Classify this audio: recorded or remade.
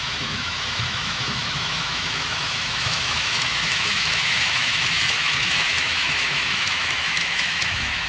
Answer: remade